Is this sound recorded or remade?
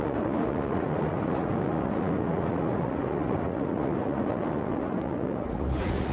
remade